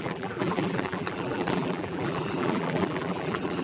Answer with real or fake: fake